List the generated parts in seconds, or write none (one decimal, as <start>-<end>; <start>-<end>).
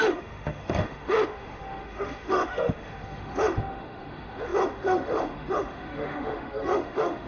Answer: 0.0-7.3